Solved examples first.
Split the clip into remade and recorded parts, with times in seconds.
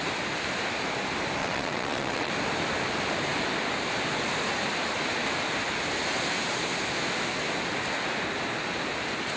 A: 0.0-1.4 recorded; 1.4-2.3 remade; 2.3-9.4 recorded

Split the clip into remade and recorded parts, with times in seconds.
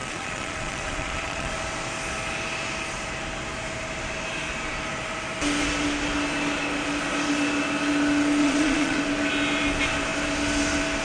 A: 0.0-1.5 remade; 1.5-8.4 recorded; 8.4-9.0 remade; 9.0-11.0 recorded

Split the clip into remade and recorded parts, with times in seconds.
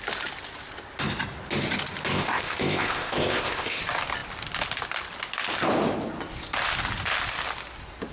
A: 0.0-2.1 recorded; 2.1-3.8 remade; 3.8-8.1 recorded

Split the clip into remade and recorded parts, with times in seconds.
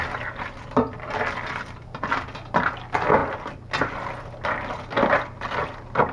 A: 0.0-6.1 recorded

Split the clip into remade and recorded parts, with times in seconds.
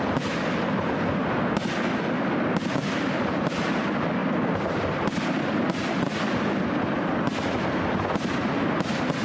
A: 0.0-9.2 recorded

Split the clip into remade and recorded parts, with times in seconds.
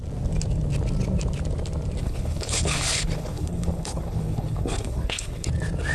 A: 0.0-2.0 recorded; 2.0-5.5 remade; 5.5-5.9 recorded